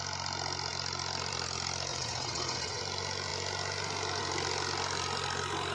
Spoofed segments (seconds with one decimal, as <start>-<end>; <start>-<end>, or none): 1.9-2.8